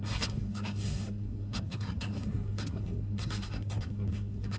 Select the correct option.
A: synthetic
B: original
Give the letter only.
A